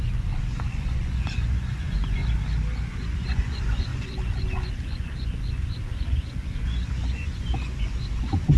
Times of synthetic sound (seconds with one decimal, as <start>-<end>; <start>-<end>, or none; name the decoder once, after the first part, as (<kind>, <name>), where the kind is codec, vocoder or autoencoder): 0.0-2.2 (vocoder, Vocos); 2.9-8.6